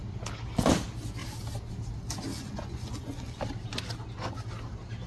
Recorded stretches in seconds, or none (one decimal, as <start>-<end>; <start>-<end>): 0.0-2.3; 3.4-5.1